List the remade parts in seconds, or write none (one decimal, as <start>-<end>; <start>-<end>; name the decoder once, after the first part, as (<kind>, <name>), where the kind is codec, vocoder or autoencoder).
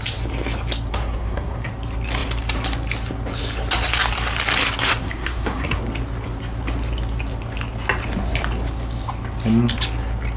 0.9-1.7 (codec, SNAC); 4.9-5.8